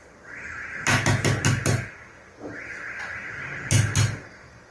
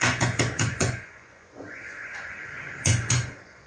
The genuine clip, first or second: first